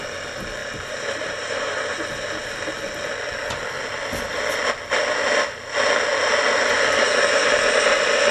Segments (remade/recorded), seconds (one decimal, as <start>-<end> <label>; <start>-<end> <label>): 0.0-0.6 recorded; 0.6-2.7 remade; 2.7-8.3 recorded